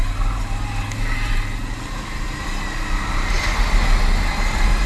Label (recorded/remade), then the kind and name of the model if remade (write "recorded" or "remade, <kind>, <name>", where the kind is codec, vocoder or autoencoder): recorded